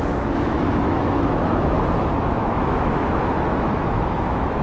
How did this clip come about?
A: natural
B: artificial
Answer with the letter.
B